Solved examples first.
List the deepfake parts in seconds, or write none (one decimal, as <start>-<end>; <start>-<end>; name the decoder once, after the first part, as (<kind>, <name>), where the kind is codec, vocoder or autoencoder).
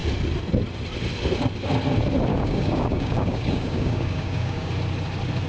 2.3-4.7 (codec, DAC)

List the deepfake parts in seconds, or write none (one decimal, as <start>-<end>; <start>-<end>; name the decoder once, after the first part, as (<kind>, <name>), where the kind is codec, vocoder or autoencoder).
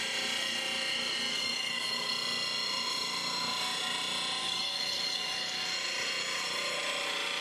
1.3-2.1 (codec, DAC); 4.4-5.6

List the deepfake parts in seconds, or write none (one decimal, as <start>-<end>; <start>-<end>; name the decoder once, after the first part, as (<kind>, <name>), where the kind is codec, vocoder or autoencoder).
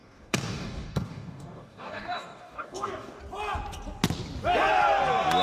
0.0-3.2 (codec, DAC)